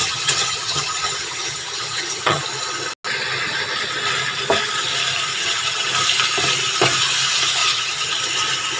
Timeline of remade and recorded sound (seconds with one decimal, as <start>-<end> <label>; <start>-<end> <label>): 0.0-2.4 remade; 2.4-5.3 recorded; 5.3-5.9 remade; 5.9-7.6 recorded; 7.6-8.2 remade; 8.2-8.8 recorded